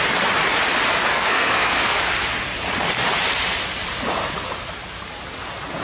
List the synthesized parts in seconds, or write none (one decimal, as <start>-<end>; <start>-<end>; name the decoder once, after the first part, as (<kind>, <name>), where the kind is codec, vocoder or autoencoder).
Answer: 1.1-2.0 (codec, SNAC)